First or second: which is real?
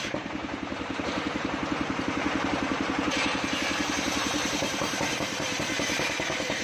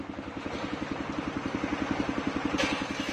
second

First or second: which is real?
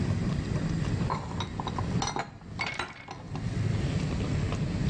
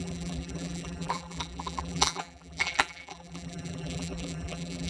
first